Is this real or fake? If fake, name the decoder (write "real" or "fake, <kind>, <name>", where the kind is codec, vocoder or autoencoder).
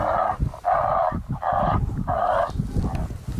real